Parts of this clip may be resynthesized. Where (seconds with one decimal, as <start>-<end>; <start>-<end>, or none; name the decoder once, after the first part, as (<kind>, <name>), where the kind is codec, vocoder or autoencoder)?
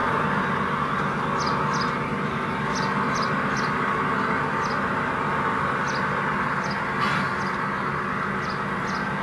none